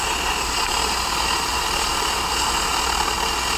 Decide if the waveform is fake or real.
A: real